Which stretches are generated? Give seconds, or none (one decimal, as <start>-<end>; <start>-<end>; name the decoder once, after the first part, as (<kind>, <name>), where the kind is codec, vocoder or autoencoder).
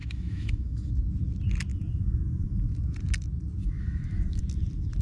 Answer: 0.0-0.9 (autoencoder, DAC-VAE); 1.7-2.8; 3.6-4.4